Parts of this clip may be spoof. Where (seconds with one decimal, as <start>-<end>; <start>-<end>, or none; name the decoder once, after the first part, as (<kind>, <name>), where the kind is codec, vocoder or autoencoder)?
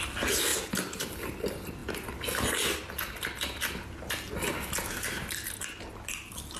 none